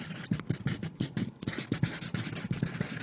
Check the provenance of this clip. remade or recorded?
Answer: recorded